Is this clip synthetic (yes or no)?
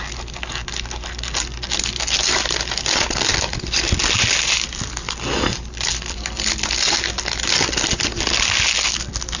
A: no